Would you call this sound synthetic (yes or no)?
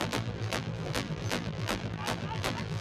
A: yes